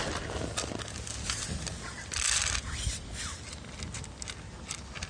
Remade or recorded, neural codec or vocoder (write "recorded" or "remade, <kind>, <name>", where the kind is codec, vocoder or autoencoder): recorded